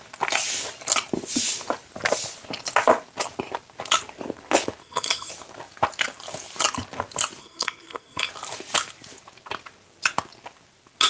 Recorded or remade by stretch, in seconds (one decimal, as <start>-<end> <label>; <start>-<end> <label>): 0.0-4.8 recorded; 4.8-5.3 remade; 5.3-7.4 recorded; 7.4-8.3 remade; 8.3-11.1 recorded